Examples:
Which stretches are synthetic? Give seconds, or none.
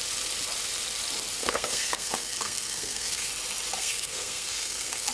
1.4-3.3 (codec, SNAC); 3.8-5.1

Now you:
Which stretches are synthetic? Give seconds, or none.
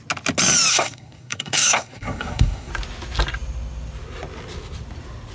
0.7-2.7 (codec, SNAC)